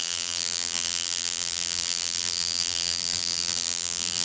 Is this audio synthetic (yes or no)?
yes